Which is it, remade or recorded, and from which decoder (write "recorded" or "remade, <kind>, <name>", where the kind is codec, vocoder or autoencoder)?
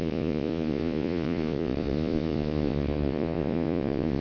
remade, vocoder, Vocos